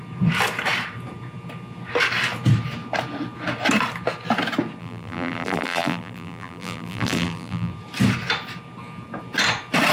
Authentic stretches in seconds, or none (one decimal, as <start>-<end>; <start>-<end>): 0.0-4.8; 7.7-9.9